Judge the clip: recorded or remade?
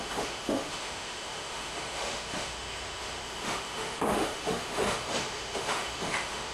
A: remade